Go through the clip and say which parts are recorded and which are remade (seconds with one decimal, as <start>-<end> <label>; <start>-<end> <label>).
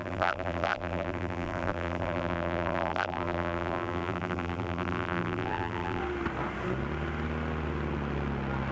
0.0-6.0 remade; 6.0-8.7 recorded